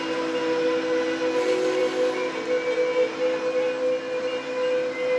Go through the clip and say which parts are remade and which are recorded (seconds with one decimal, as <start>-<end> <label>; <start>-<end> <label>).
0.0-5.2 recorded